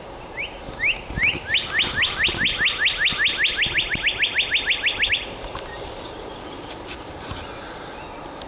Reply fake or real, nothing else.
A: real